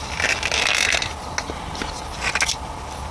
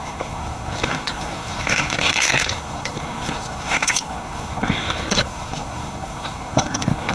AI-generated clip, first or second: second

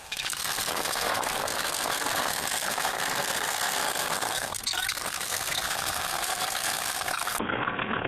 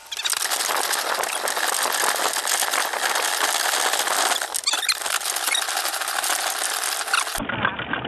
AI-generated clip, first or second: first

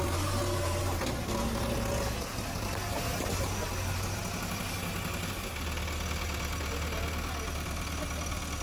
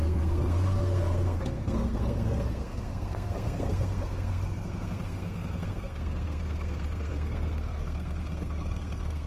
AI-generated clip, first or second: second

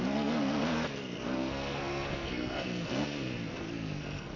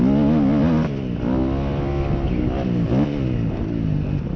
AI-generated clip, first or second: first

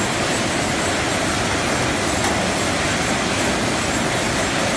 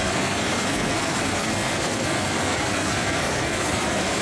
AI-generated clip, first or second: second